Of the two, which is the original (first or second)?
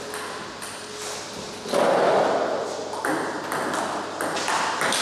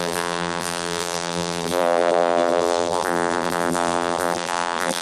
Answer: first